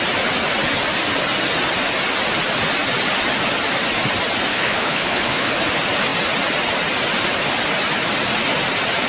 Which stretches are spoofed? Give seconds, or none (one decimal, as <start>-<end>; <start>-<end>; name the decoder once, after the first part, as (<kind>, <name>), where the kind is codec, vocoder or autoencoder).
4.5-5.6 (codec, HILCodec)